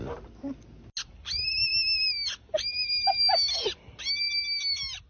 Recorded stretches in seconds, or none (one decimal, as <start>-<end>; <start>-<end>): 0.0-5.1